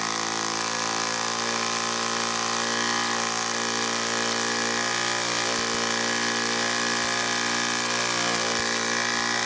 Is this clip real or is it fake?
real